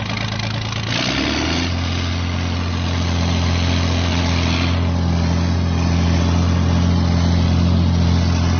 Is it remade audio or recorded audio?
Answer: recorded